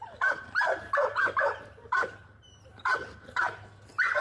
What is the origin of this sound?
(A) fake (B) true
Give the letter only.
B